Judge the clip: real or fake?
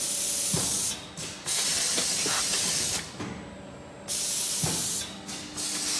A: real